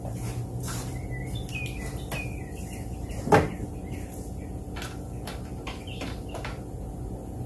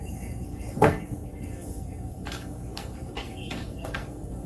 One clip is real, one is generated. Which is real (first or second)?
first